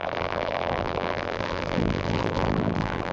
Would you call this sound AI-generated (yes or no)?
yes